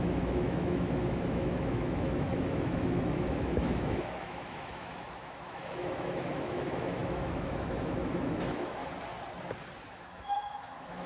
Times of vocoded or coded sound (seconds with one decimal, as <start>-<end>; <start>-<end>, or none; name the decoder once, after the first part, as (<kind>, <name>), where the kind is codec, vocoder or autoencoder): 0.0-8.8 (autoencoder, DAC-VAE); 9.9-11.1